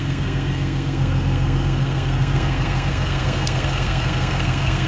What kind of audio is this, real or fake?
fake